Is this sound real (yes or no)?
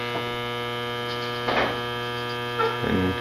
yes